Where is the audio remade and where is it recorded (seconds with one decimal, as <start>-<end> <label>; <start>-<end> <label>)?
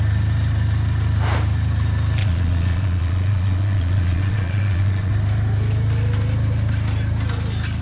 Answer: 0.0-2.2 recorded; 2.2-5.1 remade; 5.1-7.8 recorded